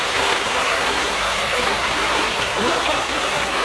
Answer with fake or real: fake